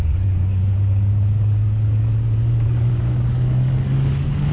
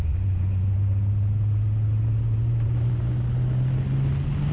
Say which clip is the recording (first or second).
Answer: second